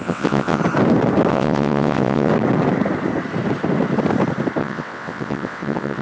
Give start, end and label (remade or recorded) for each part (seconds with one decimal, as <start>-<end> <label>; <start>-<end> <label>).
0.0-0.6 remade; 0.6-1.3 recorded; 1.3-2.3 remade; 2.3-4.6 recorded; 4.6-6.0 remade